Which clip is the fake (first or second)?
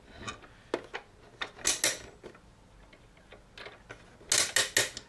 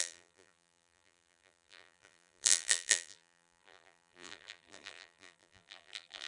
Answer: second